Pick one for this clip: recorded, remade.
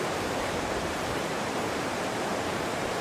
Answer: remade